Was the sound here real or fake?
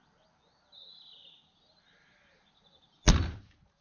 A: real